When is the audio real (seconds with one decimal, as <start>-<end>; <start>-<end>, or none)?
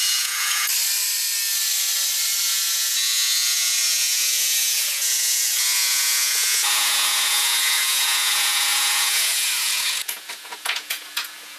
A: 0.7-2.4